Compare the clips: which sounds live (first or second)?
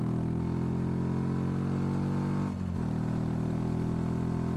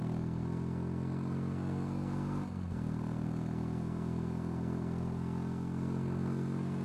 first